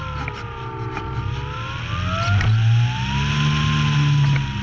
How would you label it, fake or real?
real